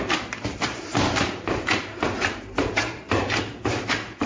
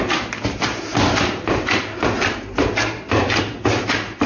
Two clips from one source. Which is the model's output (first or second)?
first